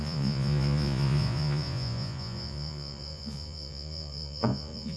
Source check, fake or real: fake